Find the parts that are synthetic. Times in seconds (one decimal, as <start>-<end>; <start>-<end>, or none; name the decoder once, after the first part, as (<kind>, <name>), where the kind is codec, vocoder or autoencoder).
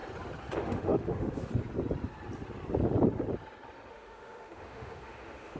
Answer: 0.6-1.5 (autoencoder, DAC-VAE); 3.9-5.6